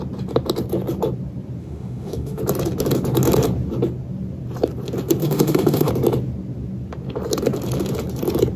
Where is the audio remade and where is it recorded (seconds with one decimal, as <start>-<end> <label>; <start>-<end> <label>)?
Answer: 0.0-1.6 recorded; 1.6-2.4 remade; 2.4-5.2 recorded; 5.2-5.9 remade; 5.9-8.6 recorded